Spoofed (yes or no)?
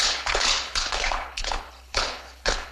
yes